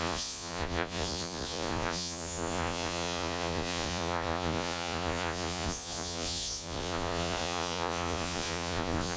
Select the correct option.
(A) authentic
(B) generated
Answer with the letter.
B